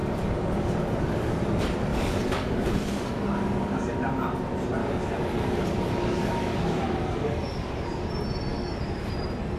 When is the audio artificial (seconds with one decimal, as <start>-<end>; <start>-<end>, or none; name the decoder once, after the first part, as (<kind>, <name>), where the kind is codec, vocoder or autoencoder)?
0.0-1.4 (codec, DAC); 1.9-4.0; 4.8-8.1; 8.5-9.1